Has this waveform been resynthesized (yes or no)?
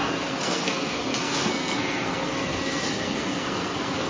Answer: yes